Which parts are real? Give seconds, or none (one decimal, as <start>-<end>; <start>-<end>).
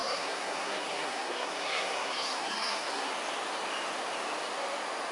3.1-5.1